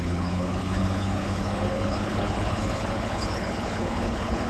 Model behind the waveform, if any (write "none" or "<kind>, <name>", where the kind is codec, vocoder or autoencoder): codec, HILCodec